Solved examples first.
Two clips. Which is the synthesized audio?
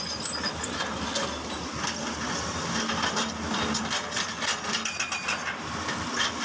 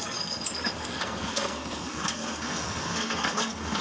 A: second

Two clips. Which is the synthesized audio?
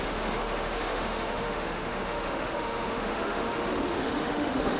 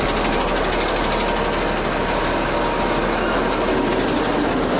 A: first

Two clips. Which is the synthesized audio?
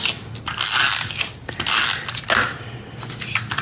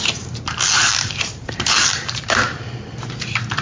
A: second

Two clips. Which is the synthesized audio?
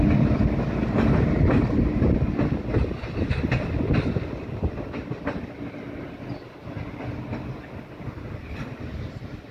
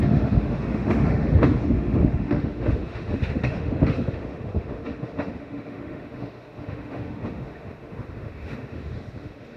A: second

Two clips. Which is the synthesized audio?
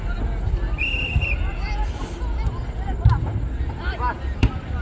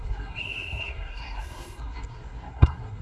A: second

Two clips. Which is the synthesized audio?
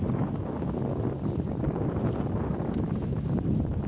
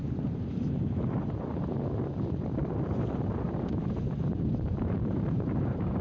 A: second